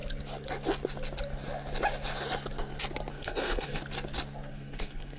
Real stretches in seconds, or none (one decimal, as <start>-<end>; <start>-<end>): 0.0-3.1; 3.8-4.5